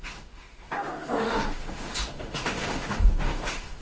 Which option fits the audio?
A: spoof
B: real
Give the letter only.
A